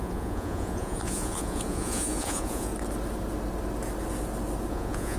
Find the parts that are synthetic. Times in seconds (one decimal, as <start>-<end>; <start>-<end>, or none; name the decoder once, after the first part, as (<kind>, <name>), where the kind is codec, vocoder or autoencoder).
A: 0.0-2.7 (vocoder, Vocos); 4.7-5.2